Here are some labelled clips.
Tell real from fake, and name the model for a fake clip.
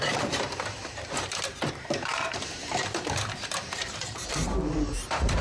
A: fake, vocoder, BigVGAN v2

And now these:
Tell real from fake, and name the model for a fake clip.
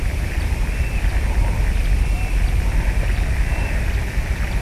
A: fake, vocoder, BigVGAN v2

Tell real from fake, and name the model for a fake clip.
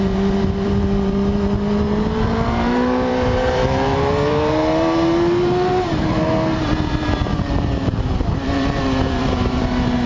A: fake, vocoder, BigVGAN v2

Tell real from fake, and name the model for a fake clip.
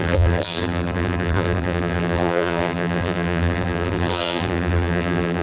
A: fake, vocoder, BigVGAN v2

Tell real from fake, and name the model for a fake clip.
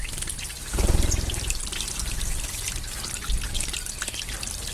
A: real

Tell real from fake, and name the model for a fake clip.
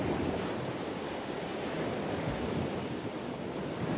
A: real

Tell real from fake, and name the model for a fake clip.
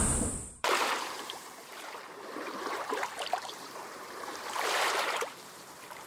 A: fake, vocoder, BigVGAN v2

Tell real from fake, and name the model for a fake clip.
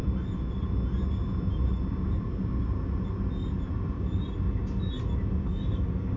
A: real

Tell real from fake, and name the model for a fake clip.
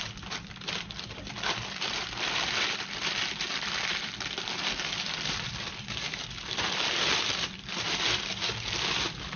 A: fake, vocoder, BigVGAN v2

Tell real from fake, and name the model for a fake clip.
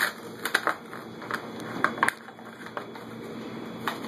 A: real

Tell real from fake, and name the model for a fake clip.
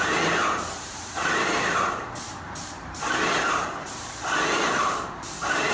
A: fake, vocoder, BigVGAN v2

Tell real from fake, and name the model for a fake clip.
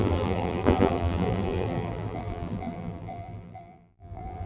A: fake, vocoder, BigVGAN v2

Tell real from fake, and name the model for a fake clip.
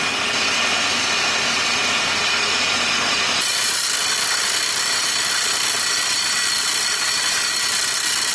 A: real